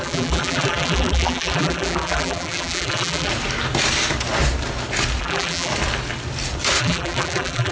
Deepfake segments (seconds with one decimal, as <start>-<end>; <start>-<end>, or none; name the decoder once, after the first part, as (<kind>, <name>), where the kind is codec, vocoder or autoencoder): 0.0-3.3 (vocoder, BigVGAN v2); 5.2-5.7; 6.8-7.7